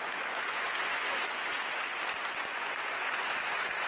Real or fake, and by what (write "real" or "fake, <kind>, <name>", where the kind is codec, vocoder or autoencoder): fake, vocoder, Vocos